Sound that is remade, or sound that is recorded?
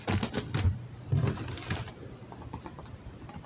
recorded